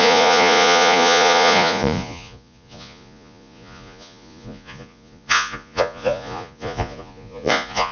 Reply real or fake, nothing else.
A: fake